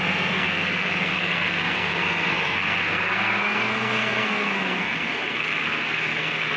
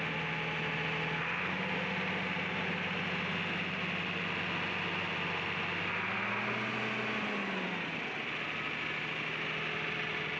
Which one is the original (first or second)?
second